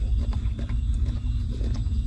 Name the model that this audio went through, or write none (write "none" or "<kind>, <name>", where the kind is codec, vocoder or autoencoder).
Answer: none